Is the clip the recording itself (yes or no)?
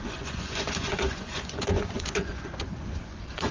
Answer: no